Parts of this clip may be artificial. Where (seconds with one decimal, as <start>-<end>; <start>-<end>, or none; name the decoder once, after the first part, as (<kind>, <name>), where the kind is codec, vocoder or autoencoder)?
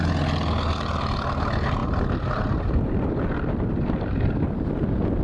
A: none